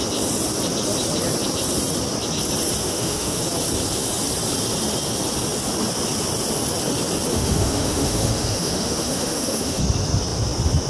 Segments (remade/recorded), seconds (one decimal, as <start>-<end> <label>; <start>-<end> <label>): 0.0-2.8 recorded; 2.8-3.4 remade; 3.4-7.3 recorded; 7.3-9.8 remade; 9.8-10.9 recorded